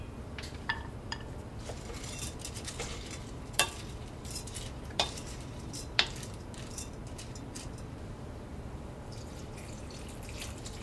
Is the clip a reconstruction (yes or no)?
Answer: yes